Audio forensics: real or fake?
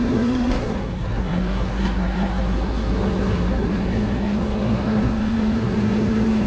fake